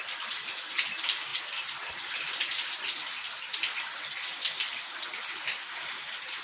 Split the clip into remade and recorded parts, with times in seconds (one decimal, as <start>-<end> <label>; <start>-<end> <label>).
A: 0.0-6.4 recorded